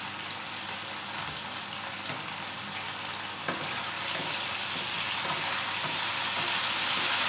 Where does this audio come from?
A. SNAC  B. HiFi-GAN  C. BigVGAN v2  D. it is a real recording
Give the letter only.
D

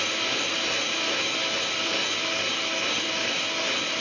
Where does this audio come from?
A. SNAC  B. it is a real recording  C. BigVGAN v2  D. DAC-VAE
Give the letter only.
B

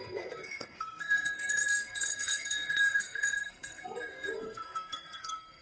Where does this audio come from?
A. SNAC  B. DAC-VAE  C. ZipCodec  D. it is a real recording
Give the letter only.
A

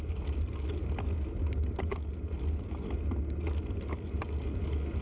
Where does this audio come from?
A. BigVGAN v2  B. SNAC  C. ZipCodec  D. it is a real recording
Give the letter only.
D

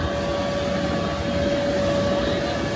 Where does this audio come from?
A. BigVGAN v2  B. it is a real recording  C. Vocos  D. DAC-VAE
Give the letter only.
B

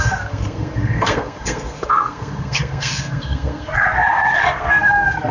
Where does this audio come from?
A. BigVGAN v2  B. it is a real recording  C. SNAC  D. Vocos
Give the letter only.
C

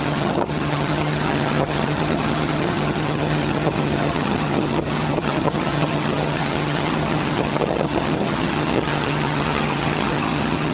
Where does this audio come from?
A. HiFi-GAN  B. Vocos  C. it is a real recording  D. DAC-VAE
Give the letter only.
A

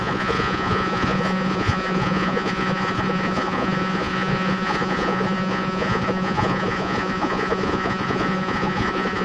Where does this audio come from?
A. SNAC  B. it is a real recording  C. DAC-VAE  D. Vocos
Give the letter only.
D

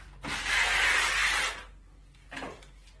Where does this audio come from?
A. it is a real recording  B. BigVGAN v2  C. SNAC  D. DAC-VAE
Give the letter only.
A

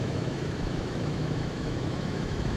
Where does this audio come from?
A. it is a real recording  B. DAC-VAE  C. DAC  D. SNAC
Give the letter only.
B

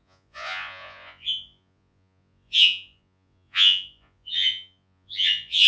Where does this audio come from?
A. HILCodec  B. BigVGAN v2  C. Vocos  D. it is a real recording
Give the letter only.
C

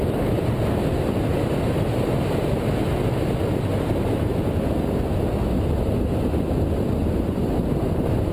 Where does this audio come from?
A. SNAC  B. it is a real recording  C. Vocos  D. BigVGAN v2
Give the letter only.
B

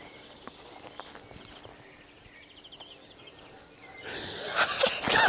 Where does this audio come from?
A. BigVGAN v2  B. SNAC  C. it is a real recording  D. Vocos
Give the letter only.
C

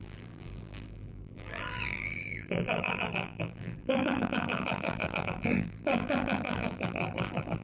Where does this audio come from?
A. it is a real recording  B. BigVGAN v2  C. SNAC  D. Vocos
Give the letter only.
B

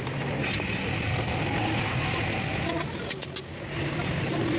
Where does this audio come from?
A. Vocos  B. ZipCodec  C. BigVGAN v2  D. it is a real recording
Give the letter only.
D